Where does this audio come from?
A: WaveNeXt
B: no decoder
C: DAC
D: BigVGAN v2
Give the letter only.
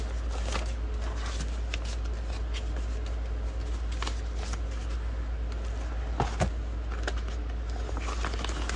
B